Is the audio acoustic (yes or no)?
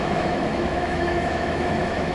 no